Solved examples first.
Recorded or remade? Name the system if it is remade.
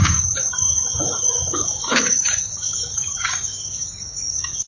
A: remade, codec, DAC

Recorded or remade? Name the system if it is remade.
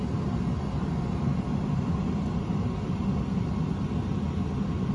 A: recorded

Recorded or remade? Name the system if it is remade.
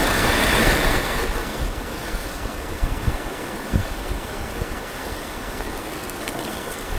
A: remade, codec, SNAC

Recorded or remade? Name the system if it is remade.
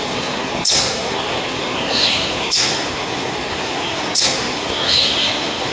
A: remade, codec, SNAC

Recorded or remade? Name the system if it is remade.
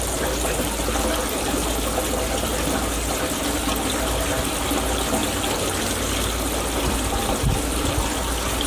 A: recorded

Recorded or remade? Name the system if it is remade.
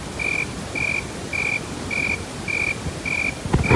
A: recorded